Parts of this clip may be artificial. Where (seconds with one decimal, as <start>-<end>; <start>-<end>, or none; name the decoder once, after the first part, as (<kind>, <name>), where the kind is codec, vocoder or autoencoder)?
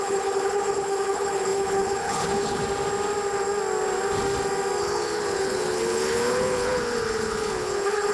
0.0-2.6 (codec, HILCodec); 4.8-8.1